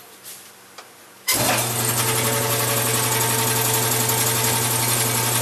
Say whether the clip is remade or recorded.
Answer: recorded